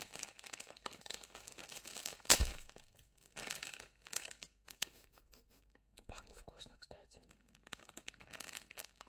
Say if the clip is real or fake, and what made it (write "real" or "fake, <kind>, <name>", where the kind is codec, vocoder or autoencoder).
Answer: fake, codec, SNAC